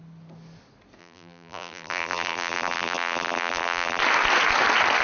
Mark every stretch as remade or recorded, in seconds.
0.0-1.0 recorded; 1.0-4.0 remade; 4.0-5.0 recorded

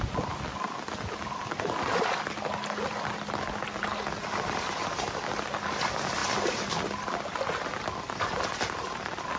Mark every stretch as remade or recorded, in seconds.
0.0-9.4 recorded

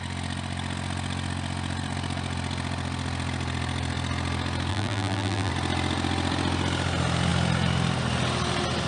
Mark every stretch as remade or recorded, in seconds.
0.0-4.7 recorded; 4.7-5.5 remade; 5.5-8.9 recorded

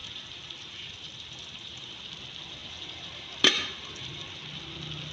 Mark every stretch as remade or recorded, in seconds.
0.0-2.0 remade; 2.0-2.6 recorded; 2.6-4.4 remade; 4.4-5.1 recorded